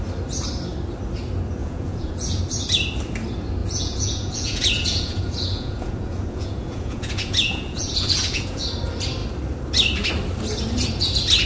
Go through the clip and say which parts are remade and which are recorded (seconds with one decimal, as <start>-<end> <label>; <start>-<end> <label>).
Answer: 0.0-1.6 recorded; 1.6-2.4 remade; 2.4-3.6 recorded; 3.6-8.6 remade; 8.6-11.5 recorded